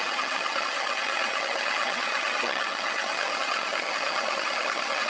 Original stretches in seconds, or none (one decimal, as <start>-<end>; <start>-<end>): none